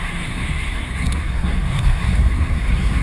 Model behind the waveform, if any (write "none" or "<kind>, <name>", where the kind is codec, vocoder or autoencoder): codec, SNAC